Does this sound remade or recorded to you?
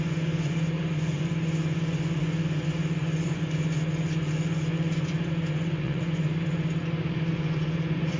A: remade